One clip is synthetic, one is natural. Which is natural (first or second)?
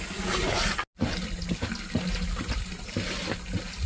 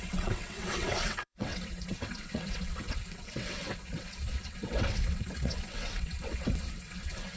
first